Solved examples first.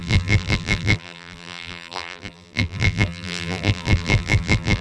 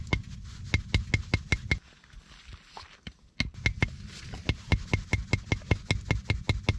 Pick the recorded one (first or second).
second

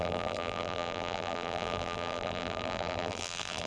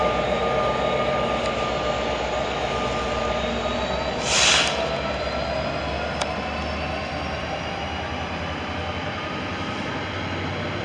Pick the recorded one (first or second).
second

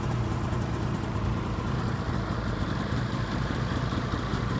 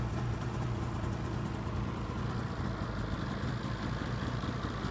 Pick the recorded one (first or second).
second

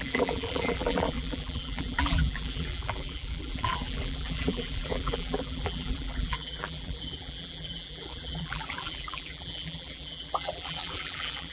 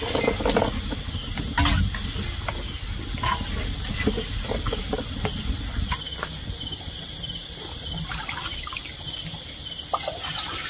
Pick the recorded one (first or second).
second